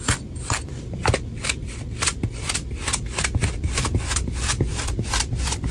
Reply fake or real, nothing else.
real